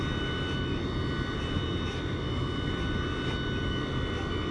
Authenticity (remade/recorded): recorded